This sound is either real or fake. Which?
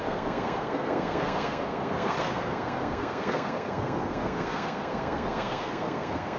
fake